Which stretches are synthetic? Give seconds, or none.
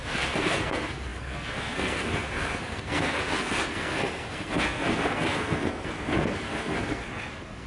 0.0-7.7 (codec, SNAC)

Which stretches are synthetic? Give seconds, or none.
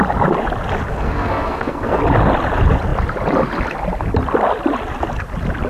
0.9-2.0 (codec, SNAC)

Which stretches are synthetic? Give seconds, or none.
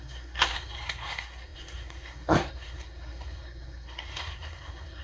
0.0-5.0 (codec, SNAC)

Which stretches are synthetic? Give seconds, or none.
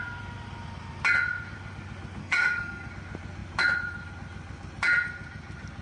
2.2-2.9 (codec, SNAC)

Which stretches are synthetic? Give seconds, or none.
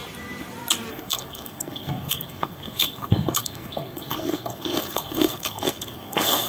0.9-6.5 (codec, SNAC)